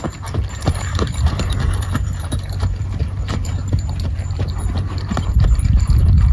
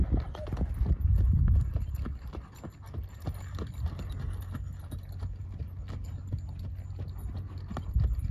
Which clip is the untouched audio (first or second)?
second